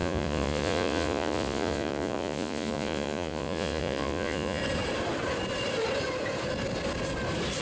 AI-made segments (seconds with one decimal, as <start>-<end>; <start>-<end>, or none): 0.0-4.6